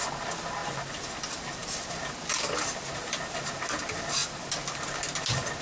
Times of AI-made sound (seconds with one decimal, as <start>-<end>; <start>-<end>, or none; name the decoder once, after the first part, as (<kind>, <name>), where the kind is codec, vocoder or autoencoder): none